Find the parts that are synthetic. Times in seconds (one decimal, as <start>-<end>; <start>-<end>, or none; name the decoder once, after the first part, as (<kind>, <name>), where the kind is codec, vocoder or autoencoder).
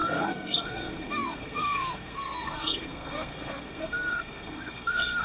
0.0-5.2 (codec, SNAC)